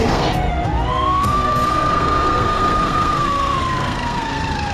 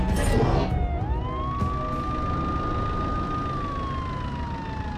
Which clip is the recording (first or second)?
second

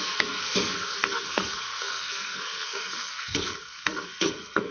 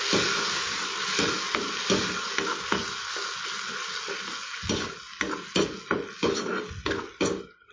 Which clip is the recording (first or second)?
second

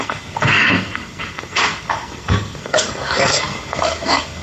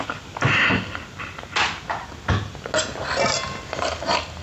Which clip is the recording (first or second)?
second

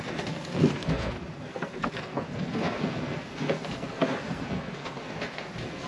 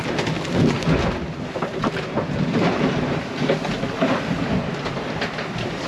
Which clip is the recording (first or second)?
second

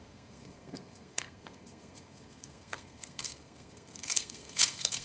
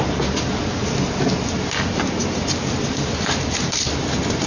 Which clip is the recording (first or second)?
second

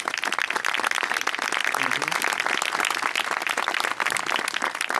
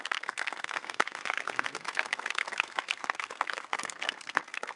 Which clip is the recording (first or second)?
first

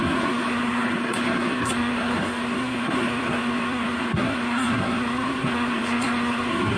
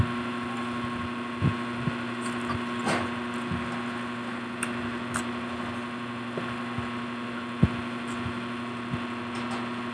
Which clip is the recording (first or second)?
second